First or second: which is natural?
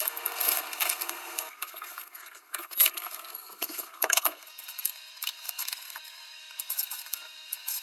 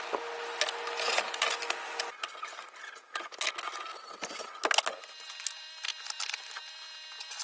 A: second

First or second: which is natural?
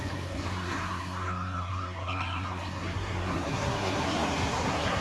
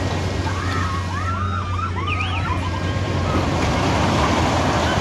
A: second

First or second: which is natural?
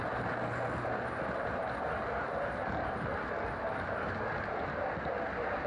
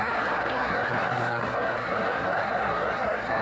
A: first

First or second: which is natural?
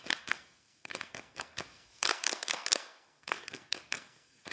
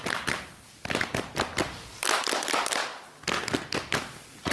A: second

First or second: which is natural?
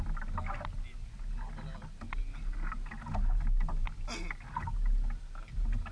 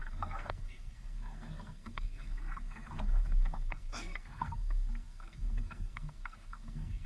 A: first